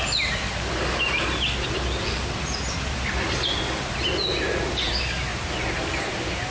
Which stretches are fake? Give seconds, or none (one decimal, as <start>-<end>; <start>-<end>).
none